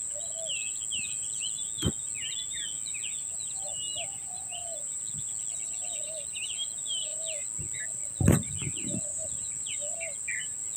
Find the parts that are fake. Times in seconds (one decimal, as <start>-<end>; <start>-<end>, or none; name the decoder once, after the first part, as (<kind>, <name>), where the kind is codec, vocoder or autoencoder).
none